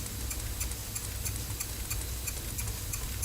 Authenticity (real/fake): real